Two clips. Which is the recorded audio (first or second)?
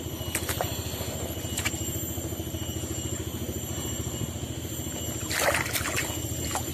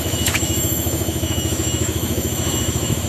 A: first